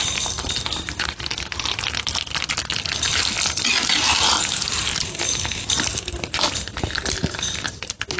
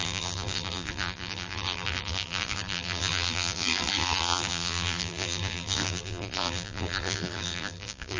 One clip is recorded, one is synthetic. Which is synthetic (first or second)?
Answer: second